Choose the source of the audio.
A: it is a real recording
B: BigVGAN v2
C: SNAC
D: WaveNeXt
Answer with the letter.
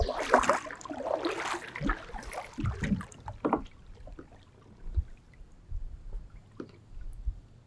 A